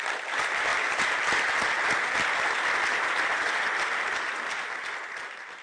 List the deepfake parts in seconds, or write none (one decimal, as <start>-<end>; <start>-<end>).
none